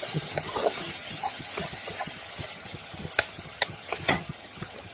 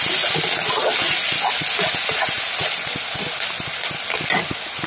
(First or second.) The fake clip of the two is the first